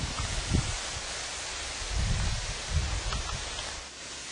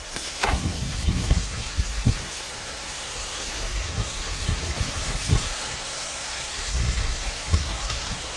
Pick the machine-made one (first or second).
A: second